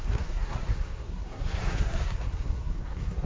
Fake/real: fake